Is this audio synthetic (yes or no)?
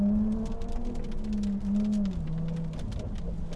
no